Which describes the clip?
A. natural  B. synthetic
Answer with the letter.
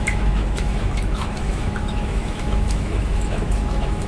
B